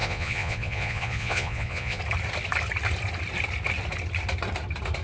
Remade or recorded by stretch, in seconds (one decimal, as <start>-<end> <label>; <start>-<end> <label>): 0.0-2.0 remade; 2.0-5.0 recorded